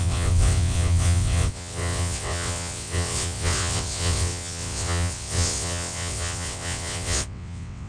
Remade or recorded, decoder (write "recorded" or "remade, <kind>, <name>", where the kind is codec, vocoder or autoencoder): remade, vocoder, WaveNeXt